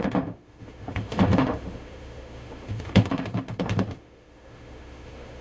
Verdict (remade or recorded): remade